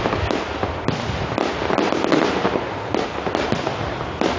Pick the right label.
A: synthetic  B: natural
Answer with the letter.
B